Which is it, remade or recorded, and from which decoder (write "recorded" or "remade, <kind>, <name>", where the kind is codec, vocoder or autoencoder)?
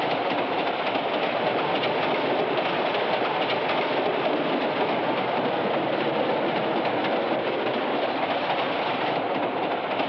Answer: recorded